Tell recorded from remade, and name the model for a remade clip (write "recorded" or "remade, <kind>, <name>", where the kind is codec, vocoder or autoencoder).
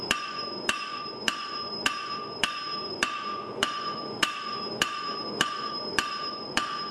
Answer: remade, vocoder, Vocos